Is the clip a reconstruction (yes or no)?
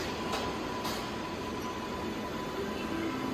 no